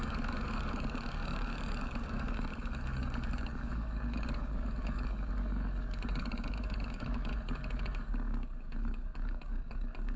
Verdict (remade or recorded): remade